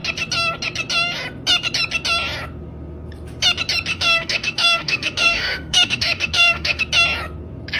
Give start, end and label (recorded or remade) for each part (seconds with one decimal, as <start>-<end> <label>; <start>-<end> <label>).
0.0-3.9 recorded; 3.9-6.8 remade; 6.8-7.8 recorded

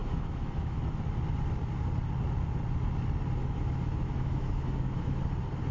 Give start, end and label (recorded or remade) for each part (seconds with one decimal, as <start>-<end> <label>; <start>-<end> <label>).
0.0-0.8 remade; 0.8-3.4 recorded; 3.4-5.2 remade; 5.2-5.7 recorded

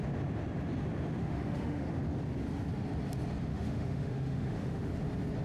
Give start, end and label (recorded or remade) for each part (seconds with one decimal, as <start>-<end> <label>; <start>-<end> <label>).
0.0-1.2 recorded; 1.2-1.9 remade; 1.9-3.5 recorded; 3.5-4.9 remade; 4.9-5.4 recorded

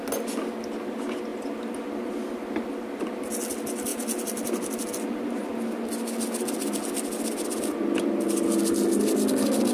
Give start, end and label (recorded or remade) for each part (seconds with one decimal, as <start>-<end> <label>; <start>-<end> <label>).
0.0-9.7 recorded